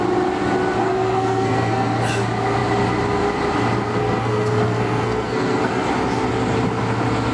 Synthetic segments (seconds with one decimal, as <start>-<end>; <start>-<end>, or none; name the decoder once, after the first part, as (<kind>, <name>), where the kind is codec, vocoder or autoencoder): 0.8-2.0 (codec, SNAC); 4.0-5.9